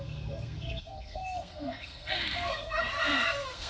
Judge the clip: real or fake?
fake